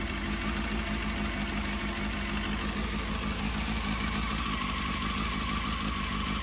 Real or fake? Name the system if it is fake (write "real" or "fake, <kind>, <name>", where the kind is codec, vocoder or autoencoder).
real